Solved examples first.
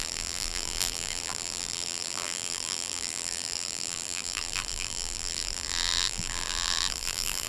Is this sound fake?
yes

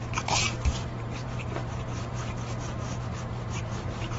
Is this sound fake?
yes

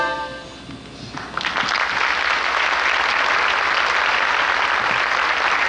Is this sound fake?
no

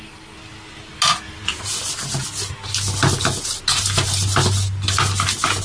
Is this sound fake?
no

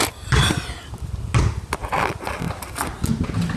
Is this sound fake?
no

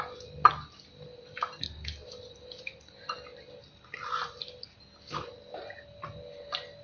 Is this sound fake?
no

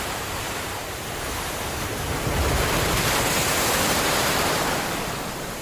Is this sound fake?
yes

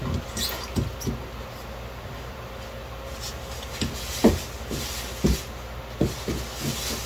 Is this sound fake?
no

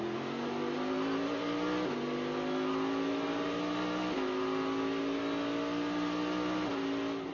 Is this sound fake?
no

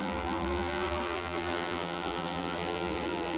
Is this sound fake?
yes